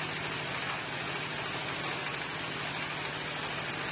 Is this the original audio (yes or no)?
yes